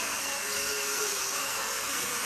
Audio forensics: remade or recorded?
remade